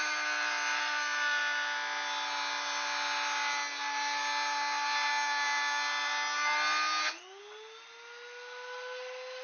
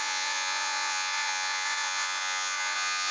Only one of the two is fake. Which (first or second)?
second